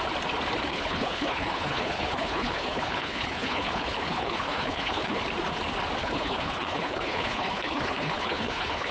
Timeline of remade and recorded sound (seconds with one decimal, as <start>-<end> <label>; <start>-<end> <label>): 0.0-0.7 recorded; 0.7-5.2 remade; 5.2-6.0 recorded; 6.0-8.9 remade